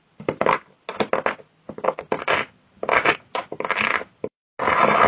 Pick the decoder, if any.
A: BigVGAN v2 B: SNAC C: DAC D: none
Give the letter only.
D